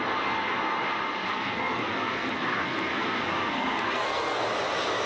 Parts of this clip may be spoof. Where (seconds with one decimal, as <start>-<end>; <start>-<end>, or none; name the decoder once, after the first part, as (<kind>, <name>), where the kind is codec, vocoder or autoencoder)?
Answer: 1.3-4.4 (codec, SNAC)

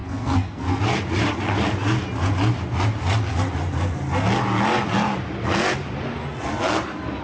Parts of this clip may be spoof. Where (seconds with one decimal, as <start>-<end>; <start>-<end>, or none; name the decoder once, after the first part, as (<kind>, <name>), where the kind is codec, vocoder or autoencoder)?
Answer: 0.0-0.8 (codec, SNAC)

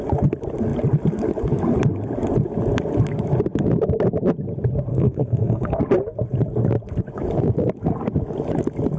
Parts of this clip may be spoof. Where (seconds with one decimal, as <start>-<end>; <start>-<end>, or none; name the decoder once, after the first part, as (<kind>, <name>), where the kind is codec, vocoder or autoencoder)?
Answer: 4.9-5.8 (codec, SNAC)

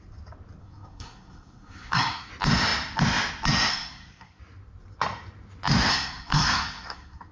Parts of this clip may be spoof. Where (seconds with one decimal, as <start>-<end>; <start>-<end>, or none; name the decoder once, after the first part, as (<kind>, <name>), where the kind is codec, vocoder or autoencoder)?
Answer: 0.6-2.3 (codec, SNAC); 3.7-4.4; 5.9-7.3

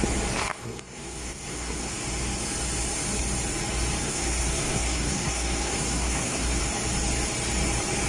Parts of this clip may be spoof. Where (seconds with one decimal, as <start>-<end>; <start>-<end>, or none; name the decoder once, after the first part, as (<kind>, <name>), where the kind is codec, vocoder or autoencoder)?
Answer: 0.4-1.9 (codec, SNAC); 4.0-6.6